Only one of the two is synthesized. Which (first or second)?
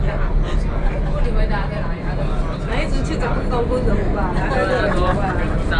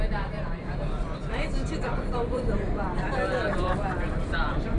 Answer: second